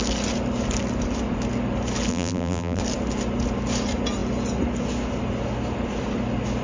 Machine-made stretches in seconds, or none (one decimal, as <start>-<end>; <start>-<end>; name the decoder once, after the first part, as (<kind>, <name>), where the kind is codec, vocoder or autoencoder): 2.1-2.8 (vocoder, BigVGAN v2)